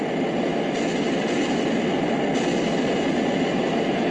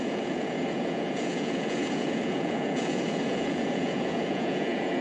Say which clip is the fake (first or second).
second